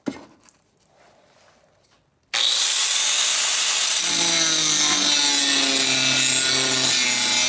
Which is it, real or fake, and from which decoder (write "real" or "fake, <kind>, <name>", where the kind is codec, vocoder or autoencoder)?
real